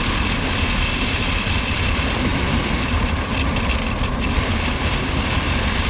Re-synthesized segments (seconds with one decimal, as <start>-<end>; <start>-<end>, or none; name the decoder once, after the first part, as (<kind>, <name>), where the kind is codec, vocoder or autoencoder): none